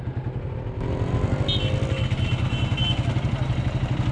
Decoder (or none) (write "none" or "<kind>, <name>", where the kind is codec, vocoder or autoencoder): none